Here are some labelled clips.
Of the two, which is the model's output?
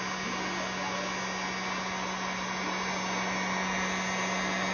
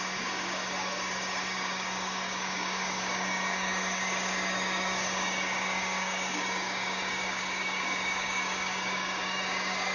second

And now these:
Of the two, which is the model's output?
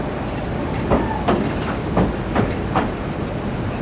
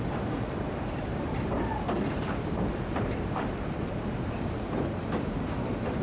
second